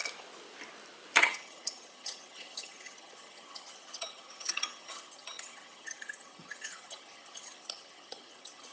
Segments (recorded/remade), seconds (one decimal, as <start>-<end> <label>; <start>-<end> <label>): 0.0-1.2 recorded; 1.2-8.7 remade